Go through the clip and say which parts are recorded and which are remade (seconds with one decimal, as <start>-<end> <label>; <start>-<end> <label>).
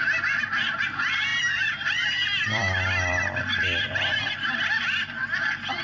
0.0-1.3 recorded; 1.3-4.8 remade; 4.8-5.8 recorded